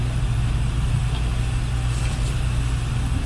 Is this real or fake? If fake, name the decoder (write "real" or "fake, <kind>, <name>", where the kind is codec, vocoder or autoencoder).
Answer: real